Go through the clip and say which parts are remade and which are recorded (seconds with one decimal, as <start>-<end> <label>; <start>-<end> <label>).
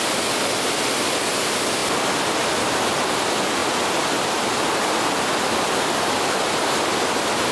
0.0-7.5 recorded